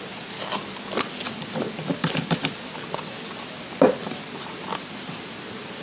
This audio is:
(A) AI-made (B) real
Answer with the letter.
B